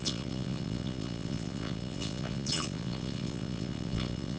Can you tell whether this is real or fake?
fake